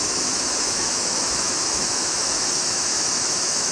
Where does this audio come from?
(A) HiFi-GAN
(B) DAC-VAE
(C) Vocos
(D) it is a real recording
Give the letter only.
B